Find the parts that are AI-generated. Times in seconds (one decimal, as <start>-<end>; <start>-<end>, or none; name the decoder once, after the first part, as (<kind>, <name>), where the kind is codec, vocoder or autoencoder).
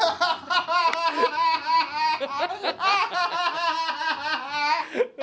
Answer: none